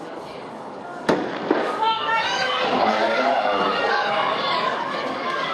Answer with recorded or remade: remade